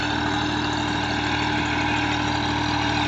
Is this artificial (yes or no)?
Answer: no